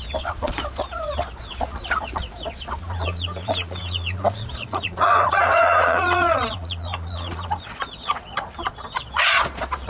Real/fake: fake